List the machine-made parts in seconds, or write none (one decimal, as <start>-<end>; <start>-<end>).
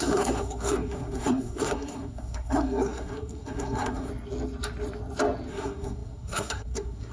0.0-4.1; 5.5-7.1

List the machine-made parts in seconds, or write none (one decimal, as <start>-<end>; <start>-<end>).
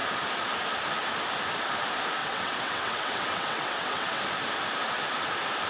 2.2-4.2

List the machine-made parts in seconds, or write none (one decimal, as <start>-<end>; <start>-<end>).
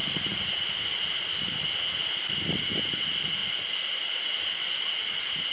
none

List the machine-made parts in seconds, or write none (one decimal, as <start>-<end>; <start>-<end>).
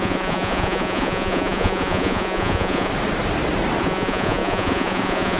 0.0-2.9; 3.8-5.4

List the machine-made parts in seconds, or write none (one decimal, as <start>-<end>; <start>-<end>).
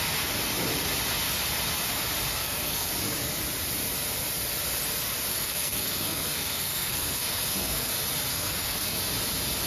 2.3-2.9; 5.3-7.9; 8.3-9.0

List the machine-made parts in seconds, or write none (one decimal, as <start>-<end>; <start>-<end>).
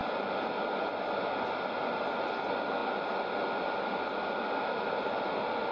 none